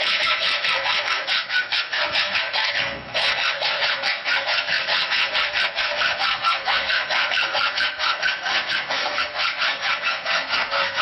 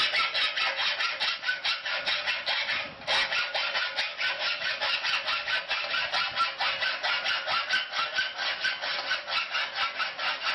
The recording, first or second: second